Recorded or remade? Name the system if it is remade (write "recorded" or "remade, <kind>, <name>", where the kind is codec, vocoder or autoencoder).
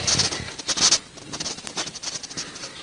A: recorded